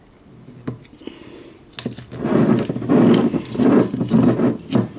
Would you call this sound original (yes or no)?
yes